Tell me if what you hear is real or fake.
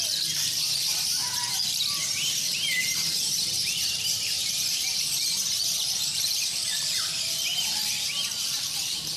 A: fake